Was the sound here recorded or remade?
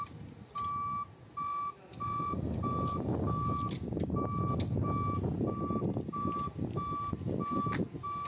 recorded